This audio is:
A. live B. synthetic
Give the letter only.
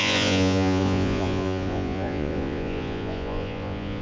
B